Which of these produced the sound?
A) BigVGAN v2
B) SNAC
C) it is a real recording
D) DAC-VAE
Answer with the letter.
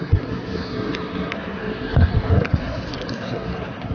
B